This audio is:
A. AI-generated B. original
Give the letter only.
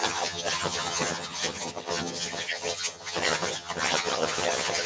A